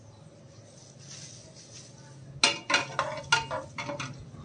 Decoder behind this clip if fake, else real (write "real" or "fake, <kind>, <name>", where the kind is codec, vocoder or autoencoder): real